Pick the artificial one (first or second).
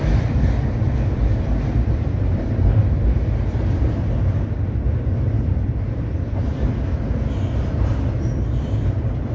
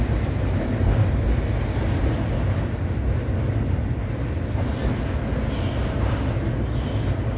first